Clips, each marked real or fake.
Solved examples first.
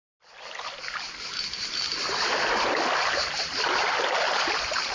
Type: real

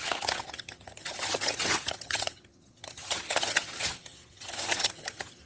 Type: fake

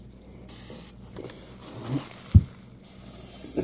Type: real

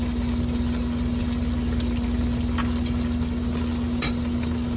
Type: real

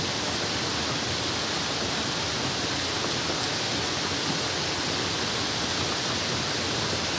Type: real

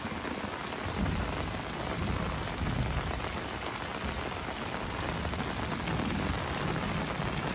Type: real